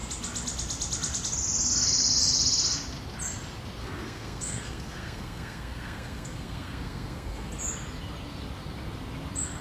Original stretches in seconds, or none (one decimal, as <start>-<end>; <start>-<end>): 0.0-3.8; 7.5-9.6